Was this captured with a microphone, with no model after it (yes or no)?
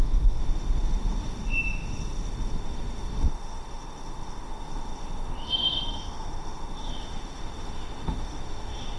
no